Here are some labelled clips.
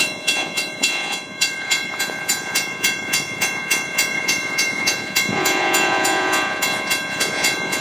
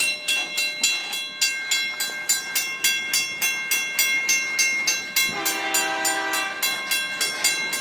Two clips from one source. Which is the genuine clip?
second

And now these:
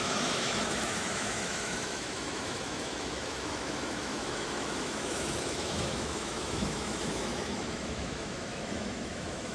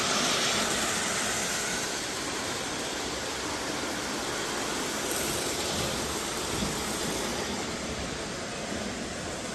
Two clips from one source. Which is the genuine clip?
second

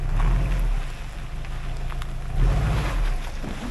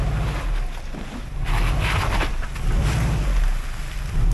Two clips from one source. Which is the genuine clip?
first